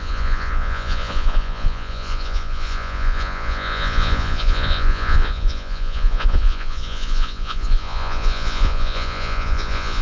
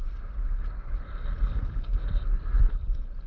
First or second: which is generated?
first